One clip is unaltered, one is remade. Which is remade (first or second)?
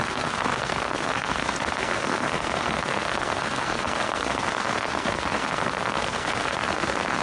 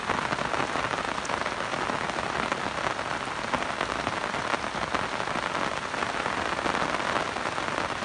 first